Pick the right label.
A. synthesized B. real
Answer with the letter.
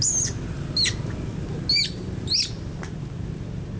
B